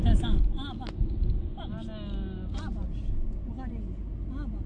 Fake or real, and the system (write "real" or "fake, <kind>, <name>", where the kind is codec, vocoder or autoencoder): real